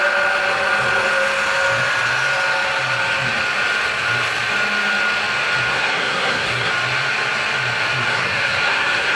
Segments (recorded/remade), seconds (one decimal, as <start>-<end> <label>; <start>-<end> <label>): 0.0-5.7 recorded; 5.7-6.7 remade; 6.7-8.1 recorded; 8.1-9.2 remade